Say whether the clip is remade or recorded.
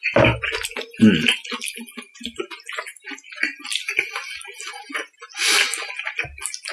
recorded